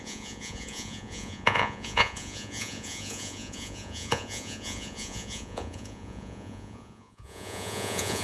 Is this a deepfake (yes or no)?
yes